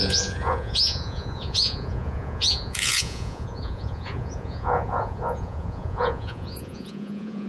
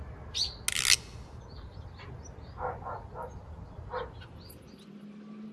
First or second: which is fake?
first